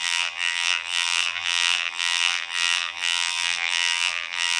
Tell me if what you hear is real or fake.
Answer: fake